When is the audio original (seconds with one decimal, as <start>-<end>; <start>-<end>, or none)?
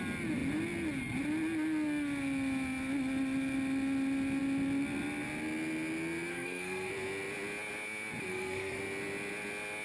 0.0-6.3; 6.9-8.3; 8.8-9.8